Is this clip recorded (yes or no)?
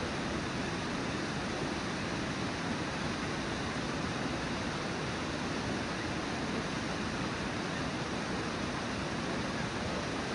yes